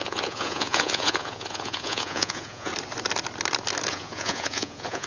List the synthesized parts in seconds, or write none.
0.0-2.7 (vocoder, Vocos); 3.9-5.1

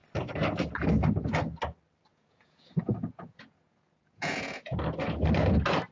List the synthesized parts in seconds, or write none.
2.1-4.8 (vocoder, Vocos)

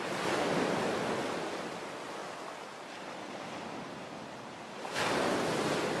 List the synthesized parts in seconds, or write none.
none

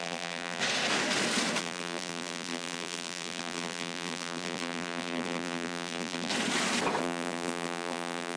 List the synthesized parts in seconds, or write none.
0.0-0.6 (vocoder, BigVGAN v2); 1.6-6.3; 7.0-8.4

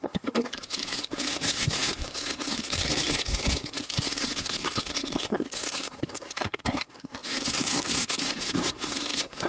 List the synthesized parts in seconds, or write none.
0.0-9.5 (codec, SNAC)

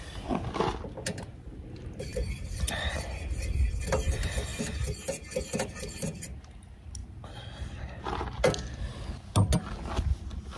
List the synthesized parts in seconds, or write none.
2.1-2.9 (vocoder, BigVGAN v2)